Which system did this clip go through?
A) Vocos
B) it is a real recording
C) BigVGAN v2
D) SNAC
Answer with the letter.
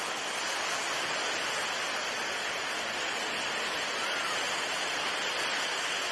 B